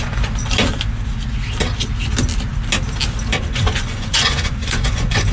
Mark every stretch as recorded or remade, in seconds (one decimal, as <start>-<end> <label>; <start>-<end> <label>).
0.0-0.4 remade; 0.4-3.4 recorded; 3.4-5.3 remade